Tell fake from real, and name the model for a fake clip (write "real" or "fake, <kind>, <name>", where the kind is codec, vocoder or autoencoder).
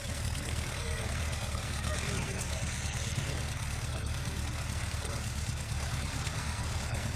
fake, codec, SNAC